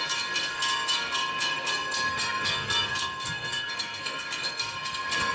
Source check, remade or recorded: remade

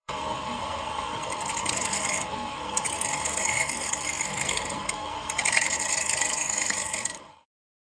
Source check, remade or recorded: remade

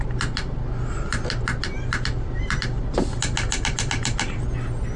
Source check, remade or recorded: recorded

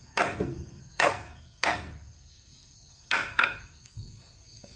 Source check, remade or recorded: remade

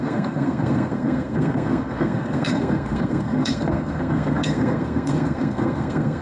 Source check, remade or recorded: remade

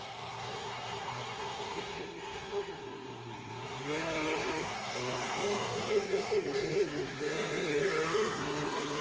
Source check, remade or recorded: remade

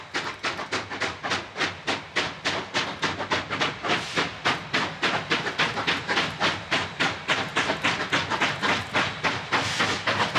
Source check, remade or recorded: recorded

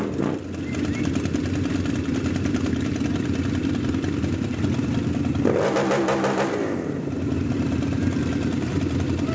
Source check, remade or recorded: recorded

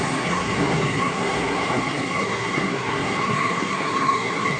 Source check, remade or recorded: remade